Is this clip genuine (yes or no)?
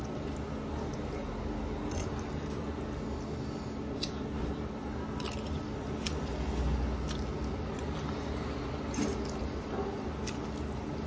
yes